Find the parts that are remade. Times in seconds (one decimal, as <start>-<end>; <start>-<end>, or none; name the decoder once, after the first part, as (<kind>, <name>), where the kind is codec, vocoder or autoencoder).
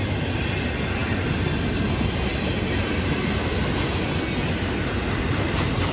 none